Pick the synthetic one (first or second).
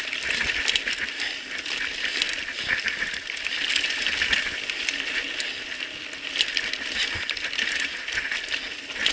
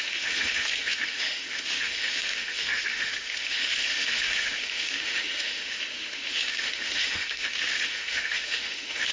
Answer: second